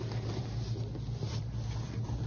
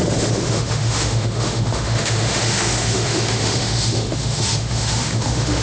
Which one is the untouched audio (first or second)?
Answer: first